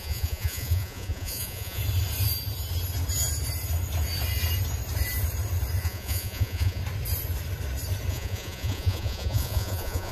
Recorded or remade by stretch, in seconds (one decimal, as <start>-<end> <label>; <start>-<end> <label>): 0.0-1.8 remade; 1.8-5.8 recorded; 5.8-6.8 remade; 6.8-8.1 recorded; 8.1-10.1 remade